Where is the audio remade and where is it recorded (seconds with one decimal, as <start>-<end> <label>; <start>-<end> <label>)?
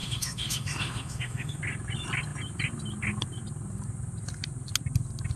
0.0-1.6 remade; 1.6-5.4 recorded